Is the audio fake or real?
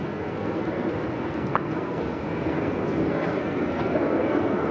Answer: fake